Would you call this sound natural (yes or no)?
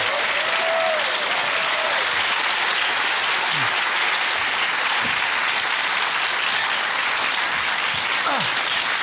yes